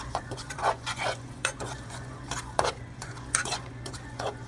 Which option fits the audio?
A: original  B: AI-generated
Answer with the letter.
B